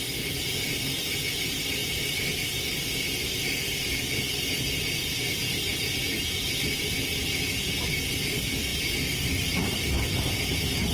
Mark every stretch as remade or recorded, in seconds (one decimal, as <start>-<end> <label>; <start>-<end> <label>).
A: 0.0-1.8 recorded; 1.8-2.5 remade; 2.5-10.9 recorded

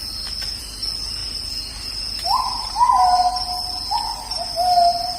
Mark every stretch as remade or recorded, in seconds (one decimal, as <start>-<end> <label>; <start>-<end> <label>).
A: 0.0-1.2 recorded; 1.2-3.3 remade; 3.3-5.2 recorded